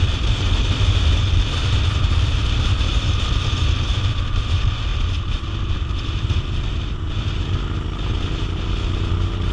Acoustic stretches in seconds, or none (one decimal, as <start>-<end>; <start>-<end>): 0.0-4.9; 5.7-9.5